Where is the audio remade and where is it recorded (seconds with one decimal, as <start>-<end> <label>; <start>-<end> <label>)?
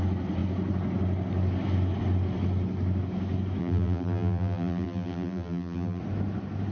0.0-3.6 recorded; 3.6-6.0 remade; 6.0-6.7 recorded